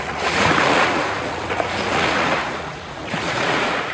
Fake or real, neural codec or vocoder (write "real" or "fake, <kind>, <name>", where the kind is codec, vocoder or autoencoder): fake, vocoder, Vocos